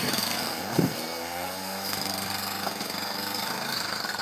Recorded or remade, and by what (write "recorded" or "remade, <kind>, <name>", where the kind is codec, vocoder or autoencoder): remade, codec, SNAC